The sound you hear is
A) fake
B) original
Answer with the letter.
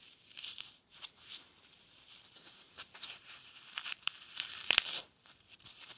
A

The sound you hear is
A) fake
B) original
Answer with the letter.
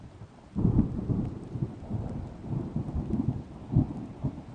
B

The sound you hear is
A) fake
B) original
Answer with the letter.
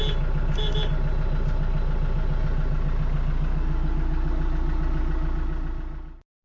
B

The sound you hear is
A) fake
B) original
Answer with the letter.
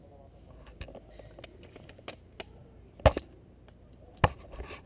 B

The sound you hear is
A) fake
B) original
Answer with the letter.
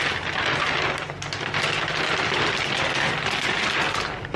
B